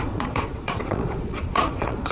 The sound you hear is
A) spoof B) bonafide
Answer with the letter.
A